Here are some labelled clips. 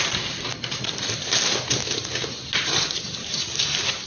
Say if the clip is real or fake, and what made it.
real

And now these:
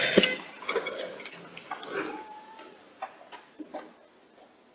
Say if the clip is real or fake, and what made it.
real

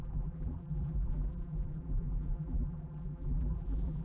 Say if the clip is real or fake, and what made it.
fake, vocoder, BigVGAN v2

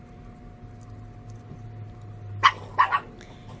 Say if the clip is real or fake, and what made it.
real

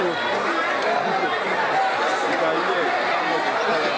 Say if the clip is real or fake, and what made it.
real